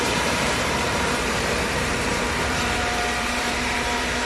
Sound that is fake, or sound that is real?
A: fake